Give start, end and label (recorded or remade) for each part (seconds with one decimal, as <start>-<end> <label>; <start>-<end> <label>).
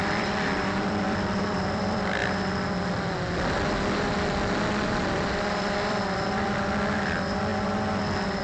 0.0-2.2 remade; 2.2-4.7 recorded; 4.7-7.5 remade; 7.5-8.4 recorded